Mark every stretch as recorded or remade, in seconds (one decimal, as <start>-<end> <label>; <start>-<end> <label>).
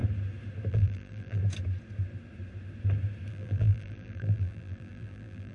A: 0.0-0.7 recorded; 0.7-1.4 remade; 1.4-3.3 recorded; 3.3-5.5 remade